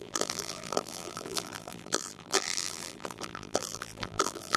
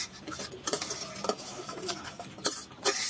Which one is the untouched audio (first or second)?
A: second